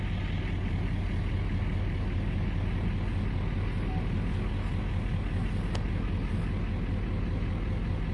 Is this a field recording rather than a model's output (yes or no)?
yes